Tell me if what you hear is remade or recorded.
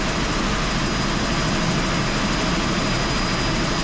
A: recorded